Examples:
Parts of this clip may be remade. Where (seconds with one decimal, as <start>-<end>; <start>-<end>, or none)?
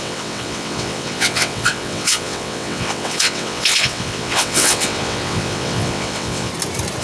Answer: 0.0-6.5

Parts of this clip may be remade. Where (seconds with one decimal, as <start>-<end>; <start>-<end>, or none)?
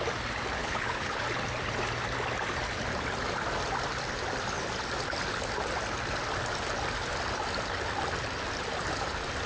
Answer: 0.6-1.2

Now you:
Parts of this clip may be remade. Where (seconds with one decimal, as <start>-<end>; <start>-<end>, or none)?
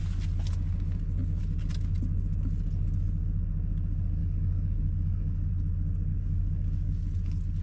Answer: 4.2-5.5; 6.1-6.9